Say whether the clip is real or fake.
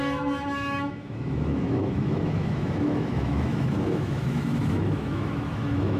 fake